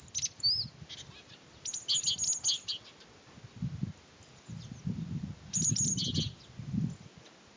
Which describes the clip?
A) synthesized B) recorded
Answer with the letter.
B